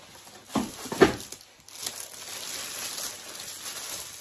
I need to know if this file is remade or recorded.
recorded